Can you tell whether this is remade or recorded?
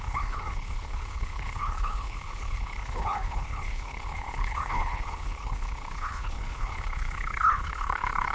remade